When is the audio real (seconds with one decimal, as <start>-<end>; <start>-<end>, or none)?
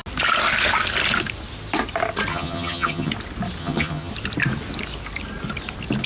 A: 0.0-2.3; 3.1-3.6; 4.1-6.1